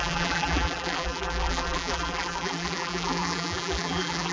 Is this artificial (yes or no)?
yes